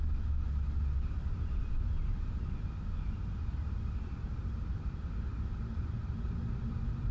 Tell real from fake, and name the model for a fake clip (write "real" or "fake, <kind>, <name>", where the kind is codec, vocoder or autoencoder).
real